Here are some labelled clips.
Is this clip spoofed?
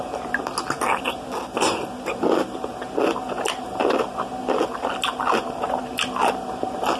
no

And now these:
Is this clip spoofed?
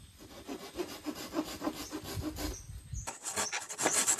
no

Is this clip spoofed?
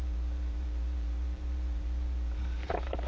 yes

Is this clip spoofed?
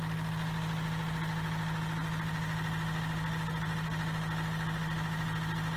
no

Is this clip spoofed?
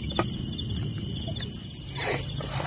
no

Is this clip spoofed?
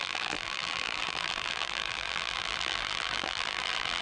yes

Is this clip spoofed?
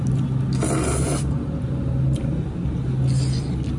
no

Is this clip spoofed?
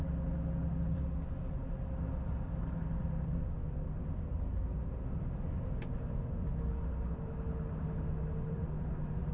no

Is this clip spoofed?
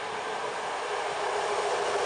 no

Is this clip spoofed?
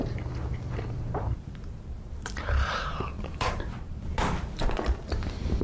yes